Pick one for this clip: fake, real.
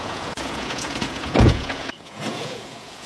fake